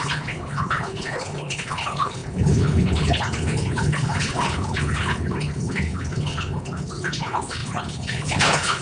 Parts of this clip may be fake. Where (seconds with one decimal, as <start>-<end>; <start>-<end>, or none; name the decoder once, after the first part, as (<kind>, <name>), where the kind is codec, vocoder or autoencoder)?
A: 0.0-8.8 (codec, HILCodec)